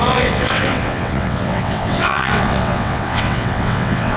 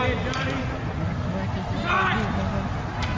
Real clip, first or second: second